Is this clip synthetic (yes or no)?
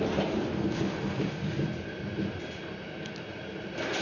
no